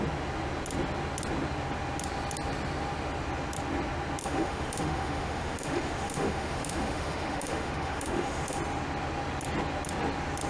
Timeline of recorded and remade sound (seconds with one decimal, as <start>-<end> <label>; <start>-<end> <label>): 0.0-4.2 recorded; 4.2-8.6 remade; 8.6-10.5 recorded